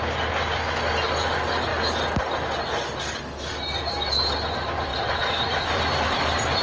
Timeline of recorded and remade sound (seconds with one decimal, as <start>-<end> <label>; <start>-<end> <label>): 0.0-4.9 recorded; 4.9-6.6 remade

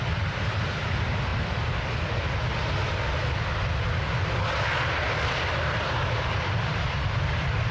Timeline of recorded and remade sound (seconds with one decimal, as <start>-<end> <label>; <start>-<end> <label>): 0.0-1.3 remade; 1.3-5.2 recorded; 5.2-7.7 remade

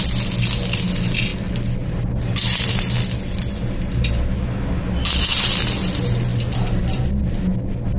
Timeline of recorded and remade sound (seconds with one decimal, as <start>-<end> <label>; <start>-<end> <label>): 0.0-8.0 recorded

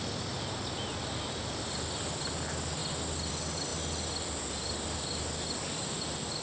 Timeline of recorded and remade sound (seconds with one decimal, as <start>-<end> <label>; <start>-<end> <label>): 0.0-6.4 recorded

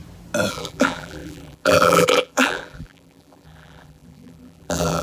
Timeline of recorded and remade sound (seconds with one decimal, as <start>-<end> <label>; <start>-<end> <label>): 0.0-0.5 recorded; 0.5-5.0 remade

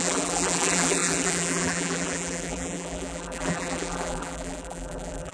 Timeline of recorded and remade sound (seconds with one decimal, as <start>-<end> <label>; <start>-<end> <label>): 0.0-5.3 remade

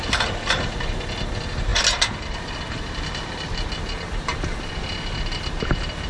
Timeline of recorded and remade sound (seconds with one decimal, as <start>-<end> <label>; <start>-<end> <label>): 0.0-6.1 recorded

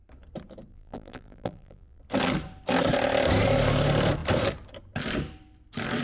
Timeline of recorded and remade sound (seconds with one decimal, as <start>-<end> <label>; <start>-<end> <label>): 0.0-0.7 recorded; 0.7-2.0 remade; 2.0-6.0 recorded